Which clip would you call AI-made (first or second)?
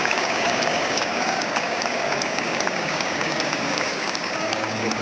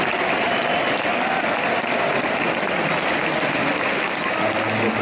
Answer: first